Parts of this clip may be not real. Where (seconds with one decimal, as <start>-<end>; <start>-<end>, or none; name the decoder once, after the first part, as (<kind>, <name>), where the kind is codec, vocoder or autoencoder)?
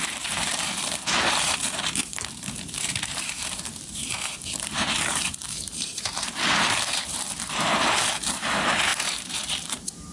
0.0-10.1 (vocoder, BigVGAN v2)